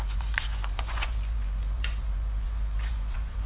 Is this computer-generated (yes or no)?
yes